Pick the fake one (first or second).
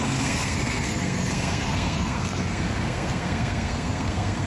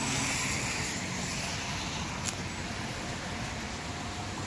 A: first